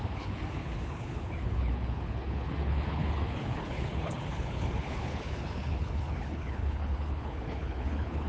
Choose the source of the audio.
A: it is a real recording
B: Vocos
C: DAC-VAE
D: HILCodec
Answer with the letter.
D